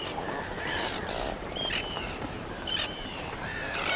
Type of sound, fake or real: fake